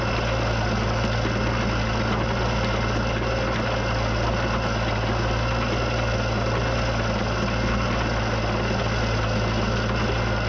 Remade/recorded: recorded